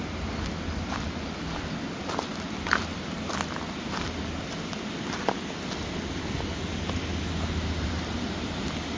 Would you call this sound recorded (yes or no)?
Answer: yes